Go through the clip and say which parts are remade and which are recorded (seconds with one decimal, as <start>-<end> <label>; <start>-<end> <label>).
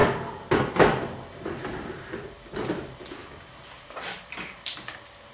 0.0-1.0 recorded; 1.0-3.2 remade; 3.2-3.8 recorded; 3.8-5.3 remade